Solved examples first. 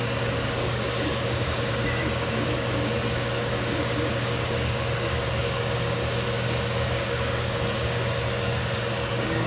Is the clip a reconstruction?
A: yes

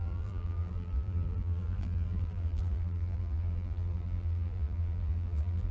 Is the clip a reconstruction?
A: yes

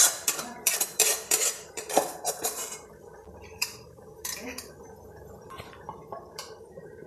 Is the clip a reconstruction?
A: yes